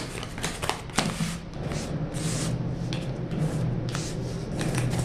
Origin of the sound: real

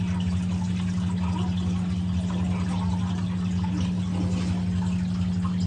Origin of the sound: real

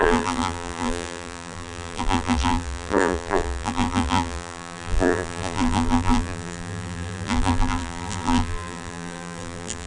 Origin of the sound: fake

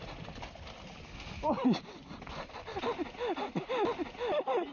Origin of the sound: real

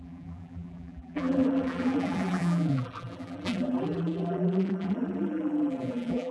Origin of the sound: fake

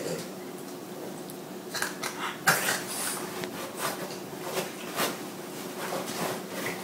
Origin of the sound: real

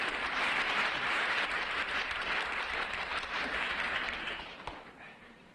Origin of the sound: fake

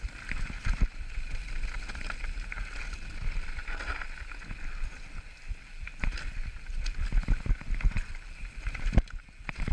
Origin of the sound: real